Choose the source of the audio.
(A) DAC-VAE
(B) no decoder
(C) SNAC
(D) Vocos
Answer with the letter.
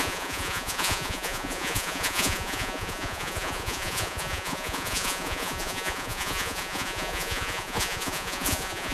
D